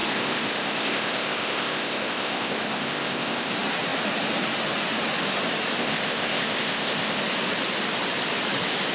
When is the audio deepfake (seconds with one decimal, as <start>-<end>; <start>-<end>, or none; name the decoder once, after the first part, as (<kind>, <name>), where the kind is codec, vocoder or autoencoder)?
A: 0.0-3.5 (codec, ZipCodec); 5.8-7.2